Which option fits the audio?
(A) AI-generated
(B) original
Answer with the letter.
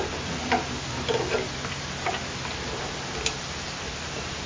B